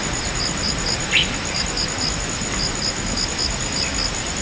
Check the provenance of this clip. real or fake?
real